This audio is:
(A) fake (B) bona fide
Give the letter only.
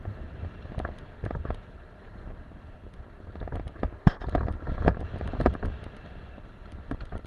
B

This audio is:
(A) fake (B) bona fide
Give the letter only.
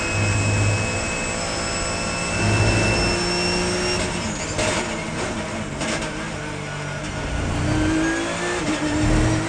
B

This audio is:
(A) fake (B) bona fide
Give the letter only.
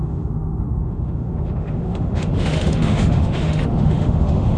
A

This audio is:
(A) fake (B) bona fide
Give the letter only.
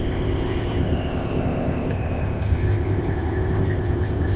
A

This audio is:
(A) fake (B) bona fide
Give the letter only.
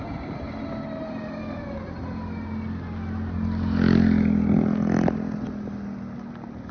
B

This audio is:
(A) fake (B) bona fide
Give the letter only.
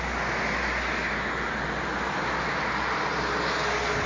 B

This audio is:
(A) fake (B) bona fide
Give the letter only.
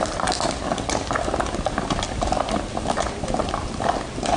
B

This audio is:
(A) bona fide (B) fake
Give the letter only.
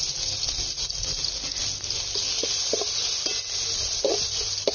A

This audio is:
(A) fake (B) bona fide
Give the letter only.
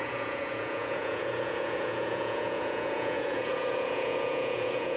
A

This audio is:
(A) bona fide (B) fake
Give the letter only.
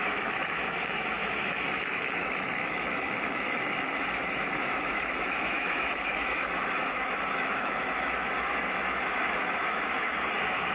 B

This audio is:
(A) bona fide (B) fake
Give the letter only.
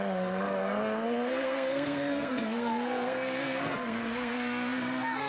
B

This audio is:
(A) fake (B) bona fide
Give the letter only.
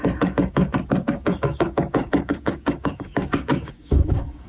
A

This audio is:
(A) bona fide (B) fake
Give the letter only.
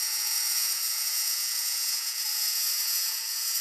B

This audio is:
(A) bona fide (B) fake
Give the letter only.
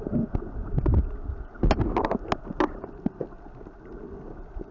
A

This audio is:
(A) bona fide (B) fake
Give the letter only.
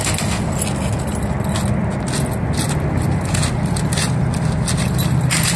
A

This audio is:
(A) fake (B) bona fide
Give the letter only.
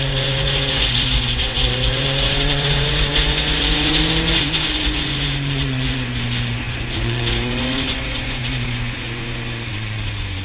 A